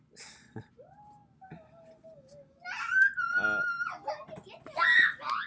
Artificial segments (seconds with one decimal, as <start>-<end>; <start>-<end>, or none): none